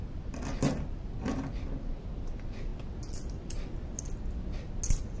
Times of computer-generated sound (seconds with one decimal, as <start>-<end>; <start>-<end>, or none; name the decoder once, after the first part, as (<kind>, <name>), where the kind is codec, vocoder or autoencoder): none